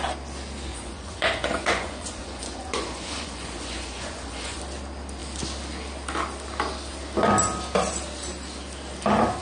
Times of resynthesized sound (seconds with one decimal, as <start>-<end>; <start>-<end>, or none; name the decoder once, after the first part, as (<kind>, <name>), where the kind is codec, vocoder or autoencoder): 0.7-4.6 (vocoder, Vocos)